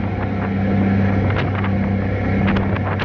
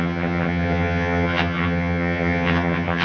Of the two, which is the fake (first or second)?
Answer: second